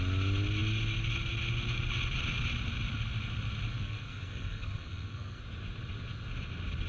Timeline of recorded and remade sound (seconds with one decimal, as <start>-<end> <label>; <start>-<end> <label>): 0.0-3.7 recorded; 3.7-5.4 remade; 5.4-6.9 recorded